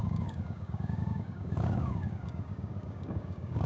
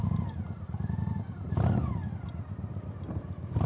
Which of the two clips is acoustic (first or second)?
second